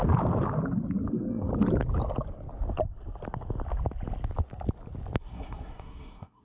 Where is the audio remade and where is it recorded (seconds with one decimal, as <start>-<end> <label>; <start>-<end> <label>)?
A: 0.0-1.1 recorded; 1.1-1.5 remade; 1.5-5.2 recorded; 5.2-6.4 remade